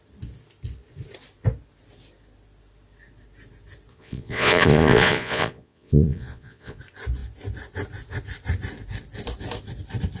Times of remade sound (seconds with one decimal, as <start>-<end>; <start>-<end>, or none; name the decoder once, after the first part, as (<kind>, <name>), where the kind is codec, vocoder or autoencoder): 3.9-6.8 (vocoder, Vocos)